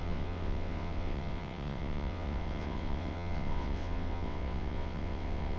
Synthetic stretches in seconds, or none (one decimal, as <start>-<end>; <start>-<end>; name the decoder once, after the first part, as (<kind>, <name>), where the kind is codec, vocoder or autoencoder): 0.0-5.6 (vocoder, WaveNeXt)